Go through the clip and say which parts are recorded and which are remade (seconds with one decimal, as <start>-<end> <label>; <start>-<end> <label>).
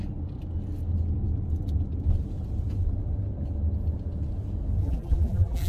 0.0-4.8 recorded; 4.8-5.7 remade